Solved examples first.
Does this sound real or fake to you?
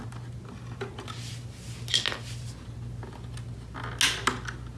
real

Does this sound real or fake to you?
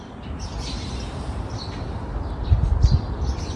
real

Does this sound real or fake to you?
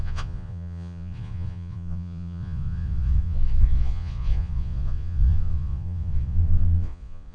fake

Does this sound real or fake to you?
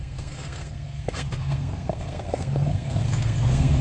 fake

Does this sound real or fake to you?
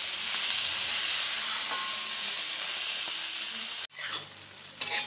real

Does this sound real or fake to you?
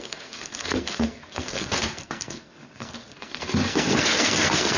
fake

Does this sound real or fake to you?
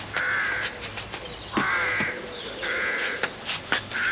real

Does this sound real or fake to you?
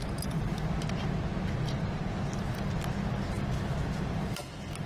real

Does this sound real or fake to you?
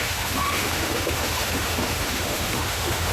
fake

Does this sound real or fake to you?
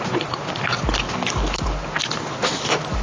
real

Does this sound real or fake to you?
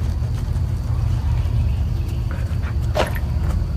real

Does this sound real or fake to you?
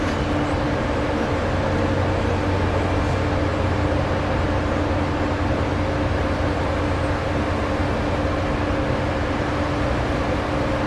real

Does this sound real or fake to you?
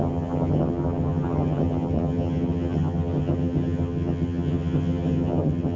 fake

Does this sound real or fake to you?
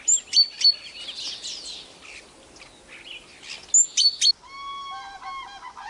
real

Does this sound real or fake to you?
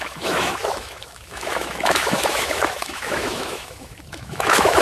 fake